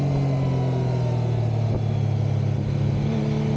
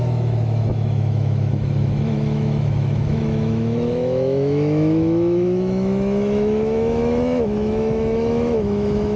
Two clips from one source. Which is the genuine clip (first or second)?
first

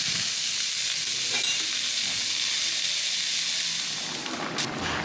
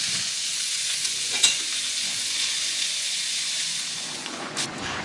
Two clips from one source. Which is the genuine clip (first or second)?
first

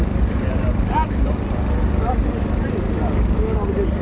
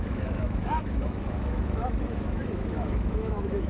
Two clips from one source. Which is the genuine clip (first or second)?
first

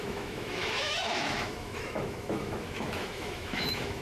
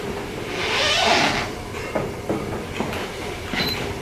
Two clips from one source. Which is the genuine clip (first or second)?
second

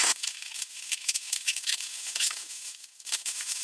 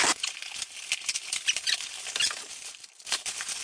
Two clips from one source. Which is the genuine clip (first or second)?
second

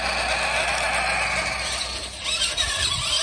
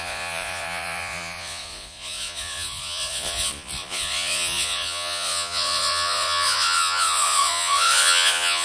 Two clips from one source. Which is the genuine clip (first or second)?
first